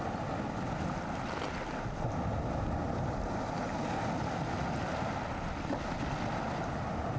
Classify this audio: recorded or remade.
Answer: recorded